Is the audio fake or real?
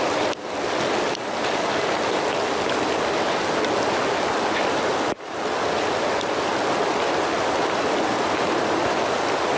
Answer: real